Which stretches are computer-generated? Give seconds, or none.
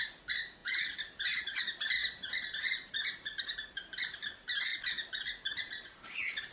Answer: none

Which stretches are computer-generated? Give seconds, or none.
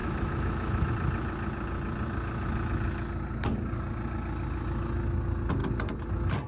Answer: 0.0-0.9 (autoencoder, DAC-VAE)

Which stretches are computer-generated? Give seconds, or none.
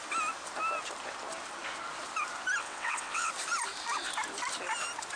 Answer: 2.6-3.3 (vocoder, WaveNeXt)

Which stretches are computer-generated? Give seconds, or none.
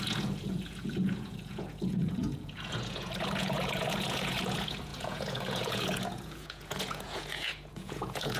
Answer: 0.0-8.4 (vocoder, Vocos)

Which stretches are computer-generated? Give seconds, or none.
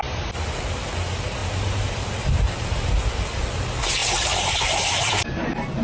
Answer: 4.0-5.1 (vocoder, BigVGAN v2)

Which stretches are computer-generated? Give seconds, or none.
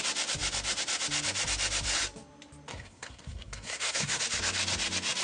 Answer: 2.7-4.2 (codec, SNAC)